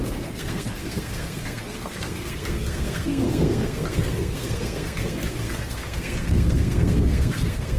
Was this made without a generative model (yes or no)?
no